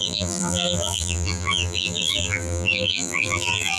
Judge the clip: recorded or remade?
remade